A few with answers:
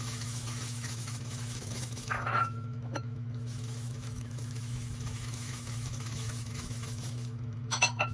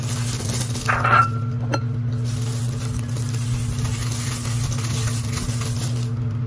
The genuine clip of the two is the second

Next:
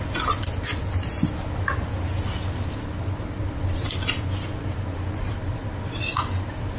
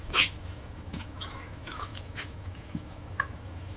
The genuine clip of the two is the first